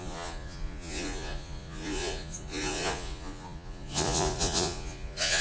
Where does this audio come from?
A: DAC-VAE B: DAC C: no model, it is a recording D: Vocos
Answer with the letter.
D